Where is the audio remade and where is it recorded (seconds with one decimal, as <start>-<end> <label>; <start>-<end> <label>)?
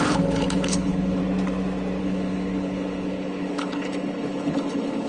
0.0-1.2 remade; 1.2-2.0 recorded; 2.0-5.1 remade